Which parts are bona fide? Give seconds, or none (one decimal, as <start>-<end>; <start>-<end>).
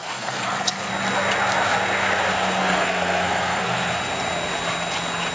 0.9-2.6; 3.9-5.3